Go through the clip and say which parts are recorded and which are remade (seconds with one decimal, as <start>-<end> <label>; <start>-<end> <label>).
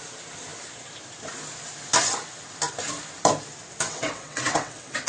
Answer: 0.0-3.9 recorded; 3.9-5.1 remade